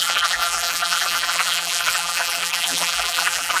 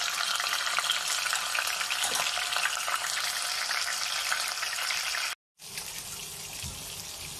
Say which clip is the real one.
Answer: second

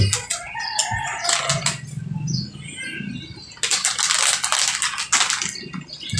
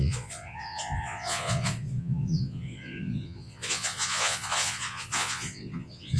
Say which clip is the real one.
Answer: first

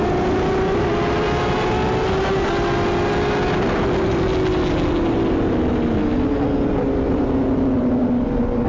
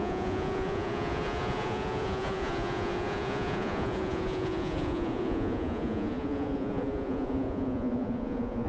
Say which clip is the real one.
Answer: first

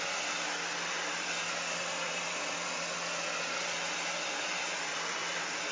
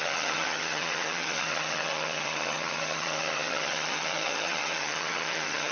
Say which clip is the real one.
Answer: first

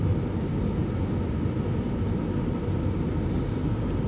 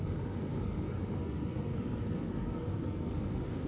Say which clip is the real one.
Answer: first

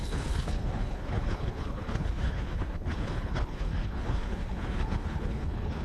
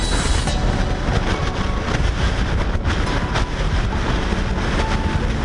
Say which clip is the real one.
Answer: second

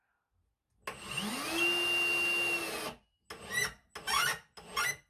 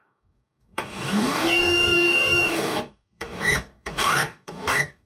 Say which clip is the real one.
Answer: first